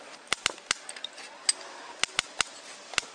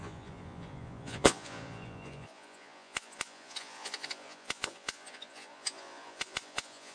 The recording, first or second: first